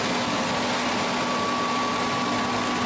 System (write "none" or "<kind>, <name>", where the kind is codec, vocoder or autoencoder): none